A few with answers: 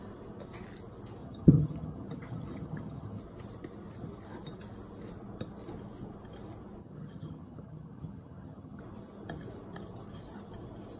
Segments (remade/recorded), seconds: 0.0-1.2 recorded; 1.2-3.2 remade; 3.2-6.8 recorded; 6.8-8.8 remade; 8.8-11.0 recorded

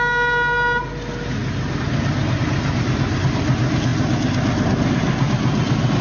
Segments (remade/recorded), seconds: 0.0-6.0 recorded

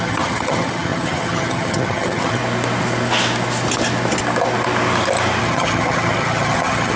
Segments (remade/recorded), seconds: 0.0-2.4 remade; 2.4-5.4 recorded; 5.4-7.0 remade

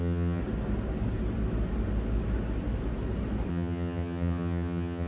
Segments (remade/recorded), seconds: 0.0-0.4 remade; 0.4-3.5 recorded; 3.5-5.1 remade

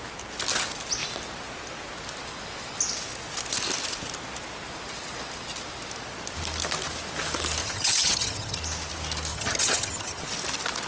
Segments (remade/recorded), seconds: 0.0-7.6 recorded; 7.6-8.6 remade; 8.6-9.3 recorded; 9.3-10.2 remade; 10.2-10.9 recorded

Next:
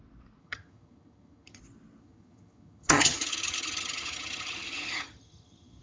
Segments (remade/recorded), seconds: 0.0-0.4 recorded; 0.4-1.6 remade; 1.6-2.0 recorded; 2.0-5.8 remade